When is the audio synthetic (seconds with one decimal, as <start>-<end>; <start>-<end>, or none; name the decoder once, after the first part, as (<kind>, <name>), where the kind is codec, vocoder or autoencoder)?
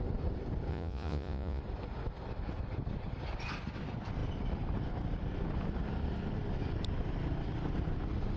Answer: 0.7-1.6 (vocoder, Vocos)